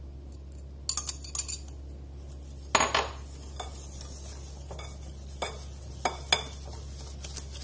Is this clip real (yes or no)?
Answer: yes